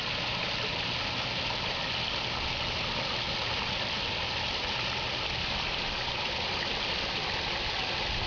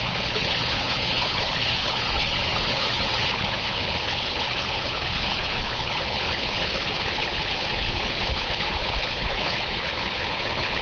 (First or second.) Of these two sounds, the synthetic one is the second